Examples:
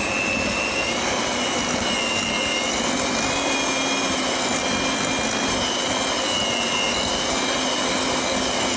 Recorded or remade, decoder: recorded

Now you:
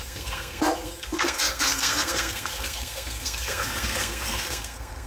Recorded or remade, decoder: remade, codec, SNAC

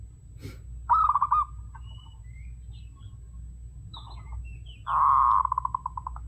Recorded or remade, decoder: recorded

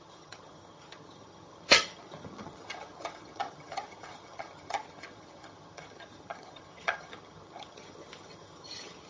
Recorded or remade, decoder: remade, vocoder, HiFi-GAN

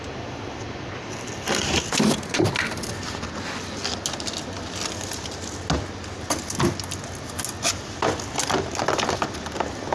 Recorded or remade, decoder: recorded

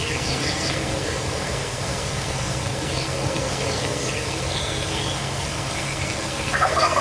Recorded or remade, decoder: remade, codec, SNAC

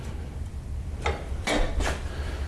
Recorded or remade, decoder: recorded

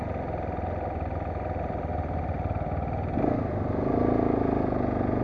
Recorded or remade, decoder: recorded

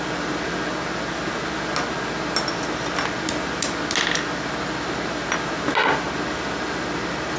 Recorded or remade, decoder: recorded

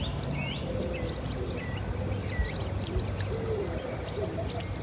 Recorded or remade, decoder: recorded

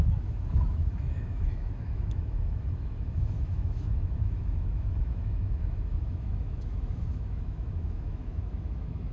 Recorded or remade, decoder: remade, autoencoder, DAC-VAE